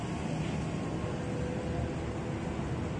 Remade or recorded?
recorded